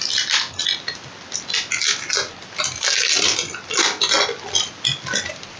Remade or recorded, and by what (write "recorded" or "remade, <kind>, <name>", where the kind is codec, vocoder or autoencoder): recorded